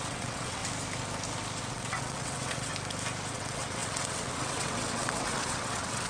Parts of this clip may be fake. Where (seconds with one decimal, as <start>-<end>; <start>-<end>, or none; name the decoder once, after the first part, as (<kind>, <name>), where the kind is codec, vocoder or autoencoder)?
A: 0.0-0.6 (vocoder, WaveNeXt); 1.6-2.7; 3.3-6.1